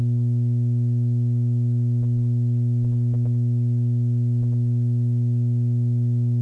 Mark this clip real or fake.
real